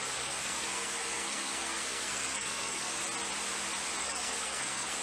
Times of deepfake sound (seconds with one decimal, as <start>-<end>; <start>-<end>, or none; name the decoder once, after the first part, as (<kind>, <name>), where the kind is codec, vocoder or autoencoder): 0.0-3.0 (codec, SNAC); 4.0-5.0